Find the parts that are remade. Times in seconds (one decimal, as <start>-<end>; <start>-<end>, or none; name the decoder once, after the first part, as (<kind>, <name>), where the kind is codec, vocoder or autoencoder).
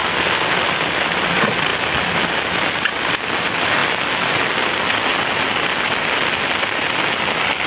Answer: 0.0-0.5 (codec, SNAC)